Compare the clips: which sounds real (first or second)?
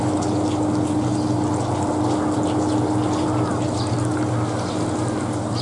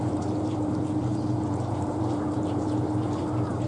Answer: first